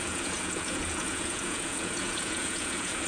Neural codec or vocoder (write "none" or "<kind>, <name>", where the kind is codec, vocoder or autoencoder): vocoder, Vocos